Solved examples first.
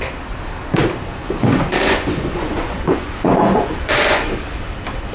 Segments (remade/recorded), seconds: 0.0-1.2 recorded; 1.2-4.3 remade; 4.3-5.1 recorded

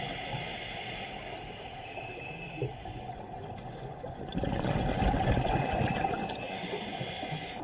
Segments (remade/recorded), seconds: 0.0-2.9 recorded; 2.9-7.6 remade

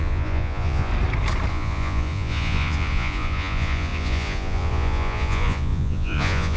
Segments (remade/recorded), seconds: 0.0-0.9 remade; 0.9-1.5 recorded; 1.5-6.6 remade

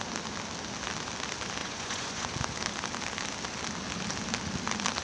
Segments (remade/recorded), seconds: 0.0-1.6 recorded; 1.6-2.3 remade; 2.3-5.0 recorded

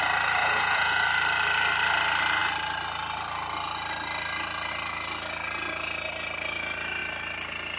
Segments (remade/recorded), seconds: 0.0-0.4 recorded; 0.4-1.0 remade; 1.0-7.8 recorded

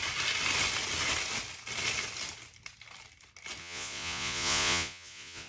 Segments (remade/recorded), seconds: 0.0-3.6 recorded; 3.6-5.5 remade

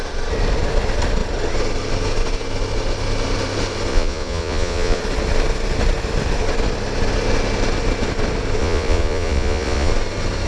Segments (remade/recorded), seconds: 0.0-3.9 recorded; 3.9-5.0 remade; 5.0-8.6 recorded; 8.6-9.9 remade; 9.9-10.5 recorded

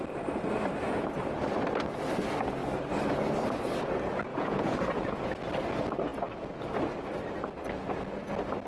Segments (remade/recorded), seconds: 0.0-4.3 recorded; 4.3-5.2 remade; 5.2-8.7 recorded